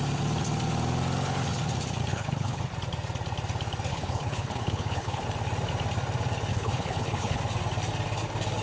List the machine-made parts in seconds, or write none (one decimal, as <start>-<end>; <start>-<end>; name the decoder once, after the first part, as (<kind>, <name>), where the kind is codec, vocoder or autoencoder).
2.1-2.6 (codec, HILCodec); 3.9-5.2; 6.5-7.4